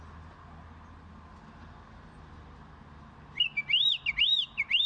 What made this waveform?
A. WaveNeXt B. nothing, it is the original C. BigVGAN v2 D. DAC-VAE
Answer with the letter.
B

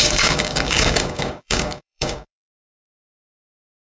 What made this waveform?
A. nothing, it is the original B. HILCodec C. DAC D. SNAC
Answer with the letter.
C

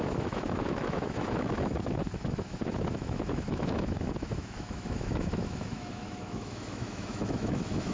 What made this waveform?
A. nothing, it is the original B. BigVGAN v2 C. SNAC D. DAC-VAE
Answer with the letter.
D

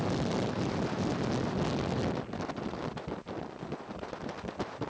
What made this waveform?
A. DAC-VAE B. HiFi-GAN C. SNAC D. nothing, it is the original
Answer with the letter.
D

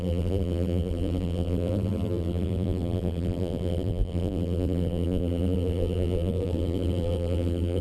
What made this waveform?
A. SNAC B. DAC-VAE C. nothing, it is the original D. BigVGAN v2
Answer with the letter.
D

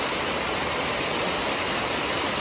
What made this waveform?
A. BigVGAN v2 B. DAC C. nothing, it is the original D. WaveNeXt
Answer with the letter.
C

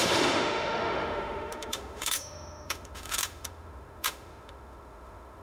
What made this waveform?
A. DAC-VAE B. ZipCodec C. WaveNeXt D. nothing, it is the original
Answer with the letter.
A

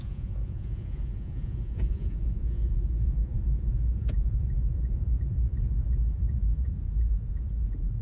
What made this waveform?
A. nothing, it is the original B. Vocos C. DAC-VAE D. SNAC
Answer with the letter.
B